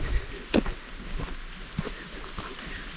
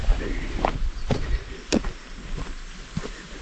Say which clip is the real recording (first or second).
first